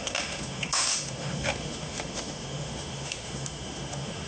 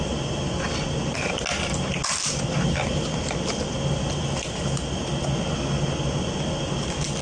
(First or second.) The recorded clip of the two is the second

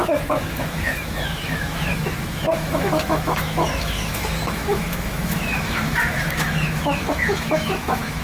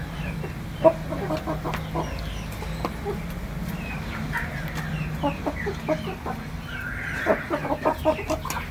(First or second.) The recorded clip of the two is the second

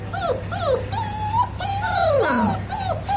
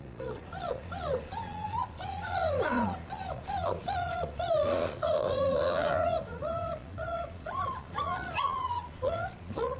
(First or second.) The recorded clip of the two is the first